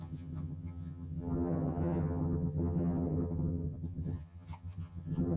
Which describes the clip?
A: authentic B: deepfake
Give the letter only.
B